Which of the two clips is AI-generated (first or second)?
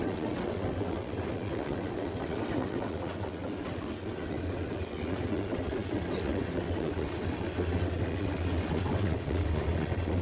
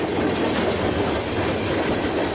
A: first